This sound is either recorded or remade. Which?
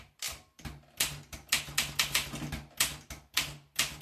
recorded